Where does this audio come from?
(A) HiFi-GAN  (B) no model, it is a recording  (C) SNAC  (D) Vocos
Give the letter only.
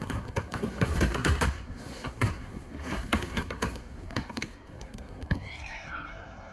C